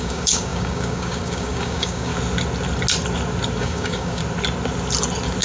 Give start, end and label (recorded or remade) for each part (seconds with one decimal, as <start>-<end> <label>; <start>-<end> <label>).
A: 0.0-2.1 remade; 2.1-3.6 recorded; 3.6-4.2 remade; 4.2-5.4 recorded